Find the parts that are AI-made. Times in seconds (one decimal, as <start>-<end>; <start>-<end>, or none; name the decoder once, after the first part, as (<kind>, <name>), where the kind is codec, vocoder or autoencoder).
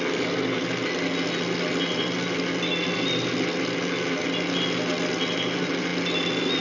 none